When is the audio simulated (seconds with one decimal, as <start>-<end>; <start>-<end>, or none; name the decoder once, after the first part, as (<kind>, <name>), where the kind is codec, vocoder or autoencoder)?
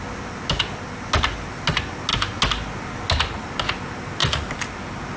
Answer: none